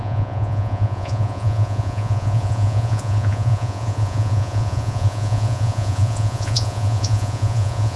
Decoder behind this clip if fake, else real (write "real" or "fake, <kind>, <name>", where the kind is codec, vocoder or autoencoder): fake, vocoder, Vocos